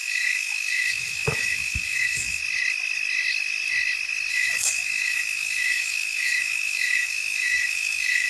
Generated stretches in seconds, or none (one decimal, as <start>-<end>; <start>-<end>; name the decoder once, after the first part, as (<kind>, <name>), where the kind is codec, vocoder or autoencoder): 0.0-2.4 (autoencoder, DAC-VAE); 4.3-8.3